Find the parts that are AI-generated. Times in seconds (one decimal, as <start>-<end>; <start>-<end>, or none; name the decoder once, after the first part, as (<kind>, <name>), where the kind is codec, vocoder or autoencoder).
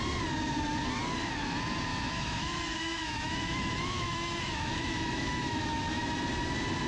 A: 1.9-6.0 (autoencoder, DAC-VAE)